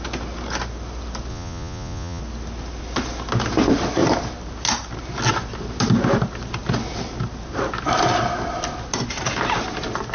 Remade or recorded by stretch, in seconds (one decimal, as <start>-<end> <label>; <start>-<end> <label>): 0.0-1.3 recorded; 1.3-2.2 remade; 2.2-10.1 recorded